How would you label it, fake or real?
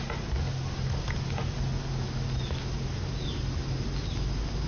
real